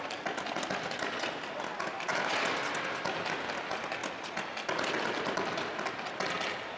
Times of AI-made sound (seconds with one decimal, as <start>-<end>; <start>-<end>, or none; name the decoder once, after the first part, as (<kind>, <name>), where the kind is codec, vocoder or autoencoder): none